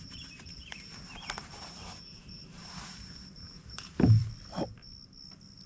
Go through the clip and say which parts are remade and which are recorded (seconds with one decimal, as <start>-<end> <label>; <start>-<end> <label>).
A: 0.0-4.2 remade; 4.2-5.7 recorded